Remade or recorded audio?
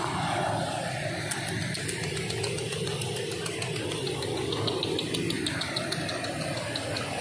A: recorded